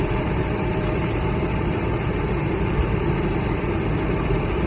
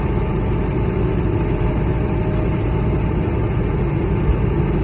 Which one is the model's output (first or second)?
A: first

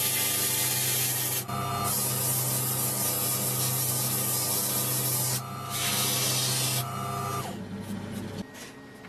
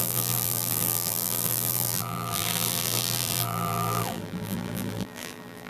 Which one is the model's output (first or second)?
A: second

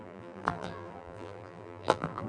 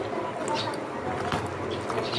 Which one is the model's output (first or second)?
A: first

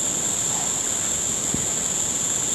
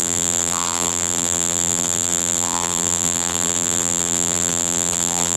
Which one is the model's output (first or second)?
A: second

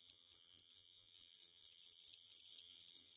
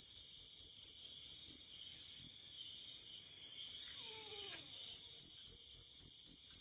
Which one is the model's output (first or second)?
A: first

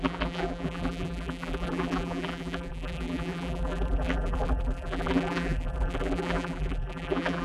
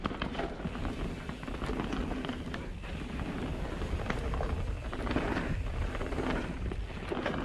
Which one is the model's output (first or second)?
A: first